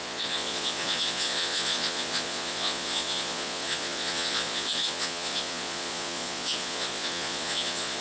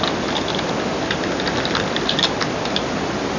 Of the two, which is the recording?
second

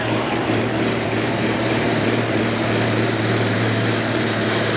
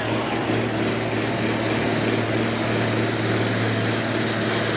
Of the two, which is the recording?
second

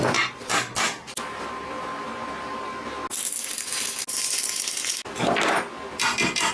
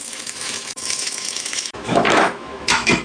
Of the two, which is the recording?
first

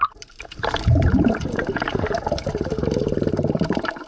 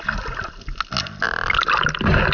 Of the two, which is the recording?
second